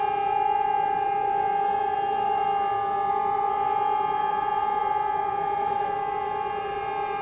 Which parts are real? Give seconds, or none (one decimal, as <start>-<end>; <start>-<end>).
2.5-3.1